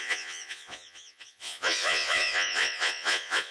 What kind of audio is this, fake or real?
fake